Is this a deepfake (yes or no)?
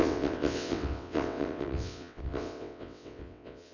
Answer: yes